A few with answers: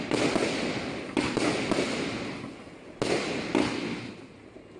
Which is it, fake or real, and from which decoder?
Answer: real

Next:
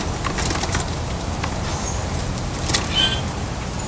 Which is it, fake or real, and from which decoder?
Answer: real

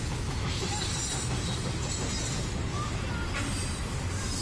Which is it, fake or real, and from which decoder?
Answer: real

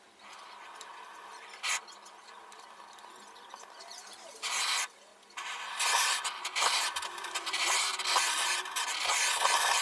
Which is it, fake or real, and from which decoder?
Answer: real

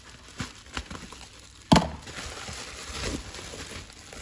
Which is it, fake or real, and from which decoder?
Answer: real